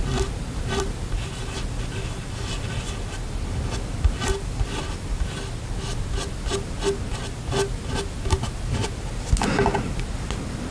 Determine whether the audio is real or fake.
real